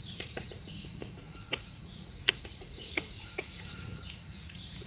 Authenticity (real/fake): fake